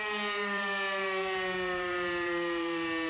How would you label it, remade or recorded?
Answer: remade